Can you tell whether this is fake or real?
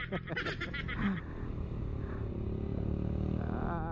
real